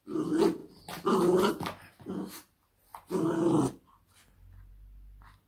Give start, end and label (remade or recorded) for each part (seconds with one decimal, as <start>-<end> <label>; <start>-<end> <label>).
0.0-5.5 recorded